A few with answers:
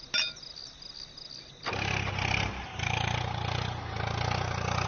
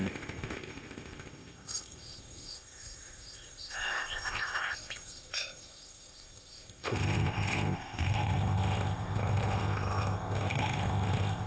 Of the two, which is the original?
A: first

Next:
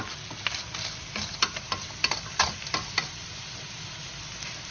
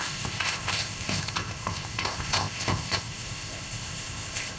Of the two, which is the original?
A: first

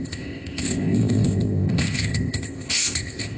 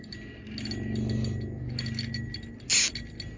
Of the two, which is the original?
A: second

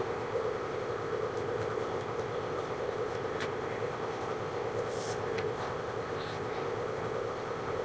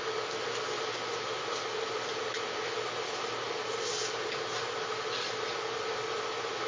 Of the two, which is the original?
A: second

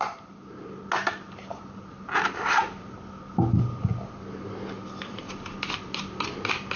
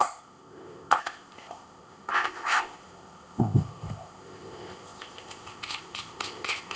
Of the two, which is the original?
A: first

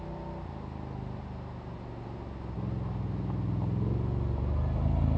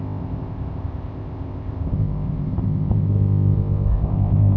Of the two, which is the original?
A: first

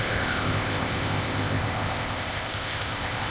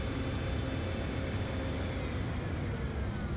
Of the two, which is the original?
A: second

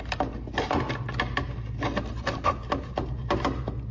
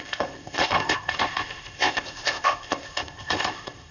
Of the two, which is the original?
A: first